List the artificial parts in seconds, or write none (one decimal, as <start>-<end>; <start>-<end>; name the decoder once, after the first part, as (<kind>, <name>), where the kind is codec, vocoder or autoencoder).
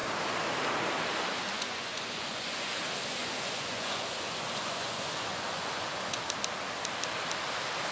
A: 1.5-2.8 (vocoder, Vocos); 3.2-6.2